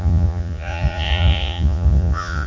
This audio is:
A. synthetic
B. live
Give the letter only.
A